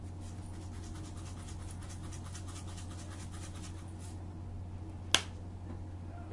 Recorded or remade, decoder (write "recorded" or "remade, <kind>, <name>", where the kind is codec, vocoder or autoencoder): recorded